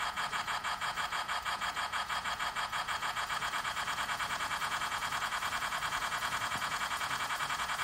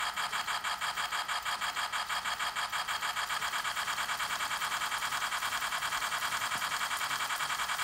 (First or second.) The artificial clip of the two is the first